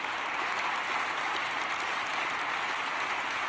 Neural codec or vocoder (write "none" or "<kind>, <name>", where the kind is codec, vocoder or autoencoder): none